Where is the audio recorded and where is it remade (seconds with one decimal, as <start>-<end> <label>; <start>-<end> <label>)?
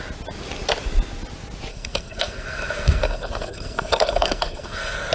0.0-1.7 recorded; 1.7-5.1 remade